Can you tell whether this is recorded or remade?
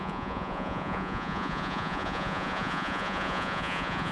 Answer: remade